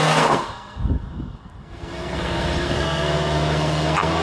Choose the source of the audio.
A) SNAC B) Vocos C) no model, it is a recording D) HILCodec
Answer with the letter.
A